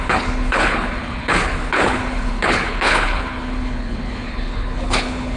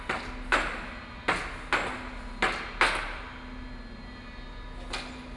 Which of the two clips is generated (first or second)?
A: first